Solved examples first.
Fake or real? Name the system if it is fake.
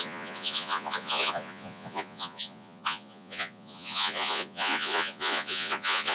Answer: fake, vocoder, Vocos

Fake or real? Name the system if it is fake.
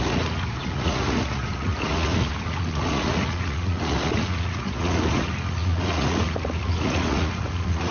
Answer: fake, vocoder, Vocos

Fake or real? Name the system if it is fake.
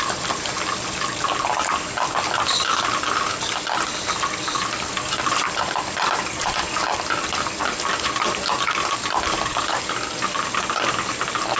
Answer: real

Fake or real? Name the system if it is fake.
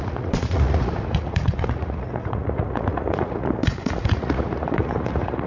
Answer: fake, vocoder, Vocos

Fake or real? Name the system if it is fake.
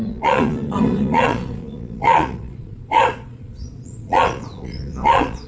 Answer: fake, vocoder, Vocos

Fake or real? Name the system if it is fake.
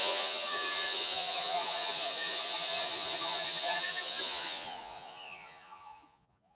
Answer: fake, vocoder, Vocos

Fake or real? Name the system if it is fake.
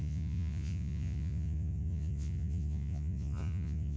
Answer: fake, vocoder, Vocos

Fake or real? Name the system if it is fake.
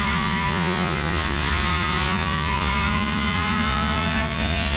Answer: fake, vocoder, Vocos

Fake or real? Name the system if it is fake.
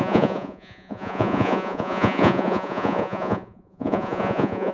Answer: fake, vocoder, Vocos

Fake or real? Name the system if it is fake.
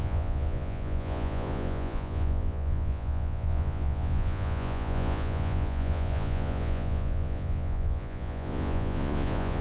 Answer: fake, vocoder, Vocos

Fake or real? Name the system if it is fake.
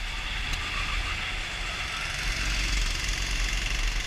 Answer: real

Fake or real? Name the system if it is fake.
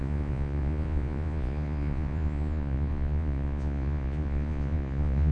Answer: fake, vocoder, Vocos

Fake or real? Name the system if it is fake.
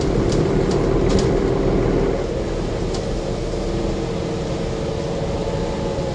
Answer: real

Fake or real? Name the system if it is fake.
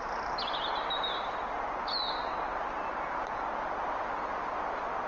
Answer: real